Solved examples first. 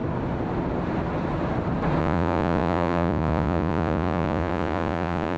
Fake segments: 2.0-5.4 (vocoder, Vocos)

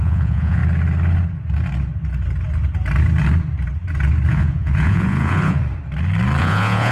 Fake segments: 0.0-0.6 (vocoder, Vocos); 4.3-5.6; 6.4-6.9